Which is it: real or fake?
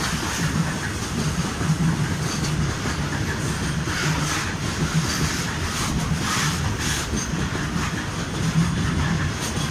real